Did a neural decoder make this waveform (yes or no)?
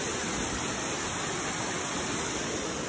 no